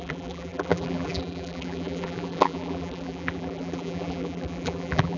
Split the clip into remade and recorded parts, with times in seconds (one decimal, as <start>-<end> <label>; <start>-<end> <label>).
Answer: 0.0-5.2 remade